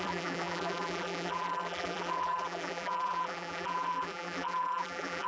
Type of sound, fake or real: fake